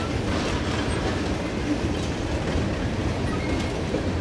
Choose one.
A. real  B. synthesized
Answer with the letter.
A